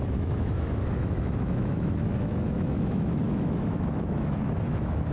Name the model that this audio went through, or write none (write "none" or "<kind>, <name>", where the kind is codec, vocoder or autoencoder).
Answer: autoencoder, DAC-VAE